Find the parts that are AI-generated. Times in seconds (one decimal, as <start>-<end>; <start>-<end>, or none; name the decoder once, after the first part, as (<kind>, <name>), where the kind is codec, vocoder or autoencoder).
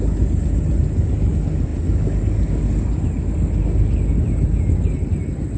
none